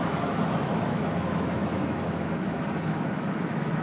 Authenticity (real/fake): fake